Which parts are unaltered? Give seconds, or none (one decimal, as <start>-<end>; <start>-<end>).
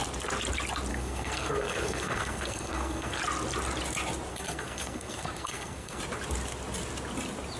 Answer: 0.0-0.9; 3.2-4.3; 6.0-7.6